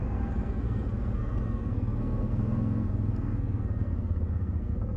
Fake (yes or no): yes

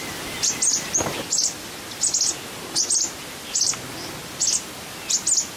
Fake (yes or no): no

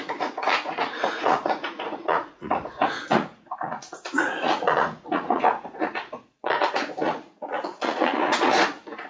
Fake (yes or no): yes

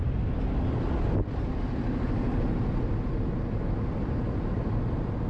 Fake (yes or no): no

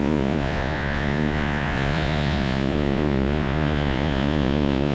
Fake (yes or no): yes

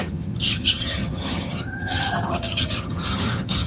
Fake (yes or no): yes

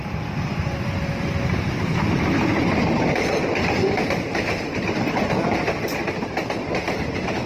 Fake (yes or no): yes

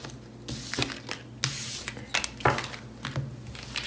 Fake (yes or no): no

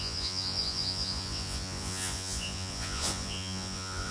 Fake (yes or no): yes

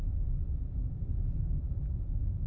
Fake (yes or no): yes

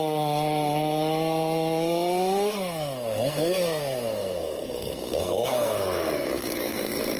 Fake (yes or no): yes